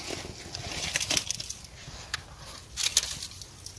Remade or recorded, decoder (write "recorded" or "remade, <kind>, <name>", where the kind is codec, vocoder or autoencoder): recorded